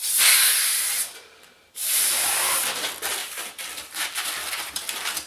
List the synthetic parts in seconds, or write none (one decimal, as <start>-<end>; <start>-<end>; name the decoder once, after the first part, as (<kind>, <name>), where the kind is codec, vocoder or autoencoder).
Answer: 0.0-0.8 (vocoder, BigVGAN v2); 3.2-4.7